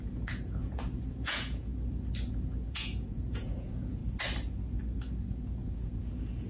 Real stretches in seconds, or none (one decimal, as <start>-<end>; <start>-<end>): 1.7-2.3; 4.0-5.1